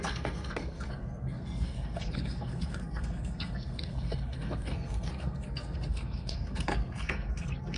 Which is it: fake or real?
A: fake